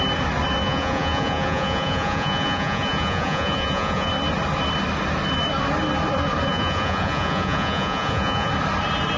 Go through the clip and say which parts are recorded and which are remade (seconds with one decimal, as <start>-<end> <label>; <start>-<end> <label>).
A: 0.0-0.6 recorded; 0.6-4.1 remade; 4.1-6.5 recorded; 6.5-8.5 remade; 8.5-9.2 recorded